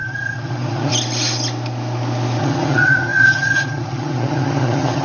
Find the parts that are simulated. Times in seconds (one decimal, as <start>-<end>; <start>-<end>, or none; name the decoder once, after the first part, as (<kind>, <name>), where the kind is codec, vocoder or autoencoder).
0.0-0.9 (vocoder, HiFi-GAN); 2.4-5.0